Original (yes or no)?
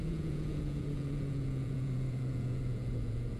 no